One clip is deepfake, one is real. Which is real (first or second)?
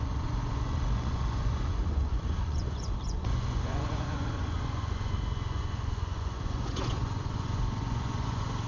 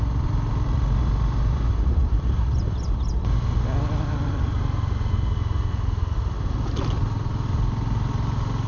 second